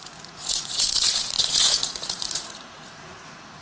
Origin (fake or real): fake